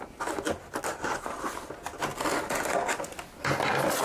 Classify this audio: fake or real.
real